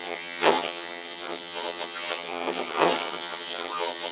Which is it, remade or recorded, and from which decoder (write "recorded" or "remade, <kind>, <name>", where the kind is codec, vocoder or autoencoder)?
remade, vocoder, HiFi-GAN